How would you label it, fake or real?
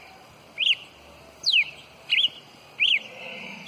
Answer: real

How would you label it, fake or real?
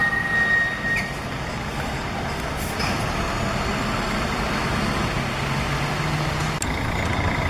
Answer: real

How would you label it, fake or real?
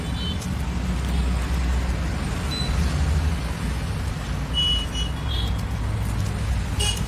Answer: real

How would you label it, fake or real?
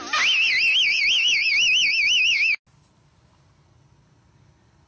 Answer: real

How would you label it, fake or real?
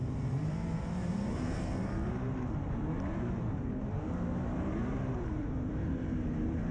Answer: fake